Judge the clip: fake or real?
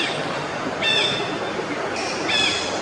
real